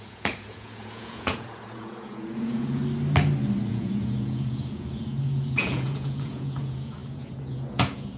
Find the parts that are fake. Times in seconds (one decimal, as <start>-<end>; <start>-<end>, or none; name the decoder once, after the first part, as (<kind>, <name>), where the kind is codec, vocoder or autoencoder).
0.0-2.8 (vocoder, Vocos); 3.7-8.2